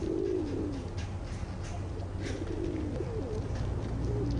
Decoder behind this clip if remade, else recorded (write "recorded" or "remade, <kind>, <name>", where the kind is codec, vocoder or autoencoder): recorded